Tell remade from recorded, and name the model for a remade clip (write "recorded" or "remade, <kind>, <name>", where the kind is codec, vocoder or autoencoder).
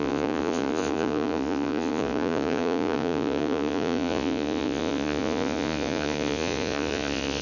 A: remade, vocoder, Vocos